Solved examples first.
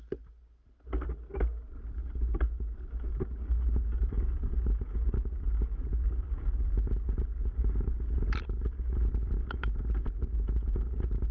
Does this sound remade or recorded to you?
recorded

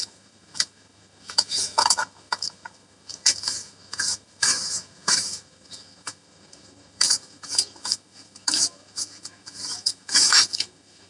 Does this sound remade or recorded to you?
remade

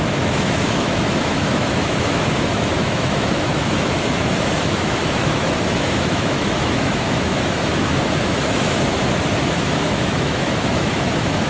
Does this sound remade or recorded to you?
remade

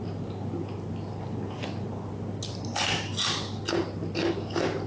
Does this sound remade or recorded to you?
recorded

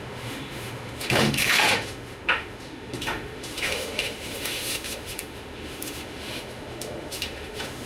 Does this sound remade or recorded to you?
remade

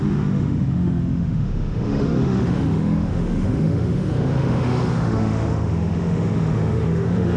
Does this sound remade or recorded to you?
remade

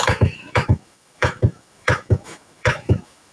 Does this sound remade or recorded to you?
remade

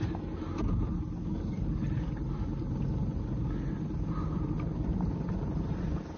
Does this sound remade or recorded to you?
recorded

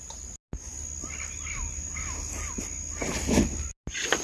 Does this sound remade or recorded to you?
recorded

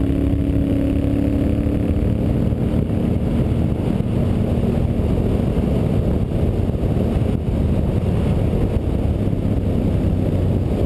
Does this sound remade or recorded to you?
recorded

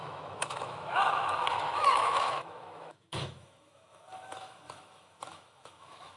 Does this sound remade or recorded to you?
remade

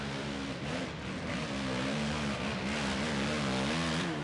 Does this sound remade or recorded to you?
recorded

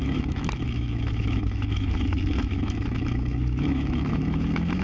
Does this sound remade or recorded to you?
remade